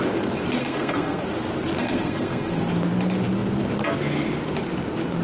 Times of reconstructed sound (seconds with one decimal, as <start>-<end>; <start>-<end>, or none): 0.6-1.2; 1.8-2.6